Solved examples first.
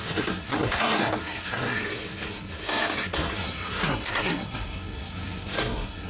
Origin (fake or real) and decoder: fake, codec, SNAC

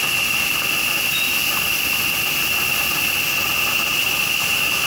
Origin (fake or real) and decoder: real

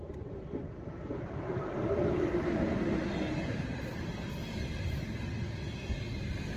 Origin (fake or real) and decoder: real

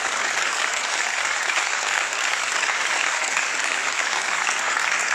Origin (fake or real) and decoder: fake, codec, DAC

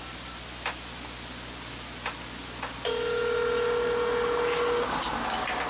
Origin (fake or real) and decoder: real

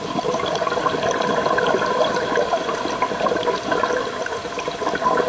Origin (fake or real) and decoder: real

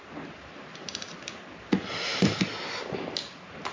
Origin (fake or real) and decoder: real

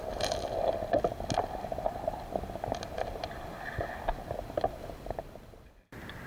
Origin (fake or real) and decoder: real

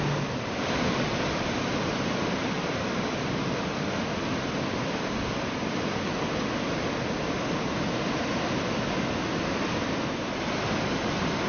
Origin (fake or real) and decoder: real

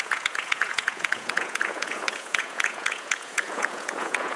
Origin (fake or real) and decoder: fake, vocoder, Vocos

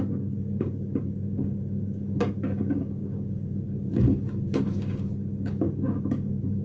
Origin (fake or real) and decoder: fake, codec, DAC